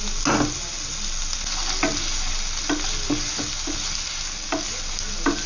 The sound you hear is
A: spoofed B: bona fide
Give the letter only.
B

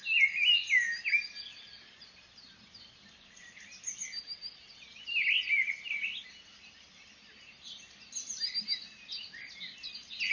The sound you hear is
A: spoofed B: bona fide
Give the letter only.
B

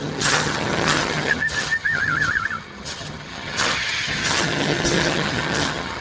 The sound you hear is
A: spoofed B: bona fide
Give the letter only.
A